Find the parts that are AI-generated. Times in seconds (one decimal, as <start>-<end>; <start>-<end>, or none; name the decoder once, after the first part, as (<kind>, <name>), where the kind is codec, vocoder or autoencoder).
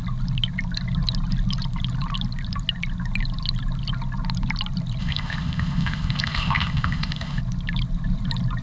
5.0-7.4 (codec, ZipCodec)